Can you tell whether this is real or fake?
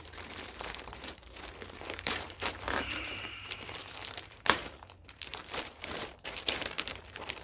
fake